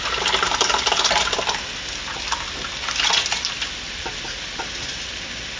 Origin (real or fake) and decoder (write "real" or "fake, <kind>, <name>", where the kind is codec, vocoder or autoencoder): real